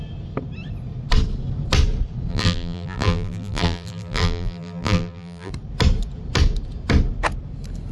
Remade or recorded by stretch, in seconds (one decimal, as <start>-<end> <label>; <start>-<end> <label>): 0.0-2.3 recorded; 2.3-5.5 remade; 5.5-7.9 recorded